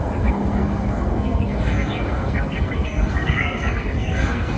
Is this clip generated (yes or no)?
yes